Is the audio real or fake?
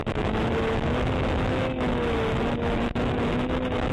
fake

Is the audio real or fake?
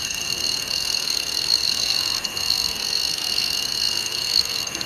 fake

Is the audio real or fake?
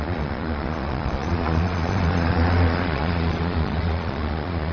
fake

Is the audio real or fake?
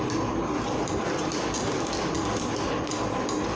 real